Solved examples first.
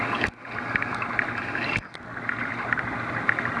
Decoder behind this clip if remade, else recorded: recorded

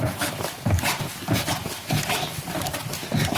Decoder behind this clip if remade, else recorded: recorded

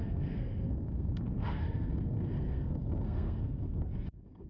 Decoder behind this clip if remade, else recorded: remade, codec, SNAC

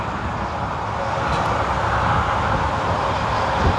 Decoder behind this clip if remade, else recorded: recorded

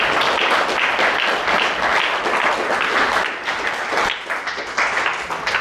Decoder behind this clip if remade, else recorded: recorded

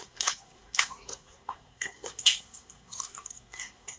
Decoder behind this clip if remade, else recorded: remade, codec, SNAC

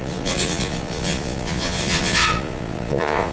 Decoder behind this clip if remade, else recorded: remade, vocoder, Vocos